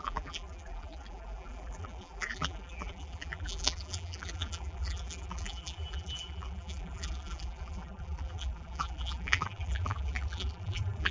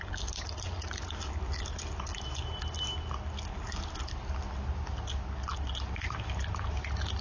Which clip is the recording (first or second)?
second